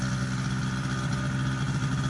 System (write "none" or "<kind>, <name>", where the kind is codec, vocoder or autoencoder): none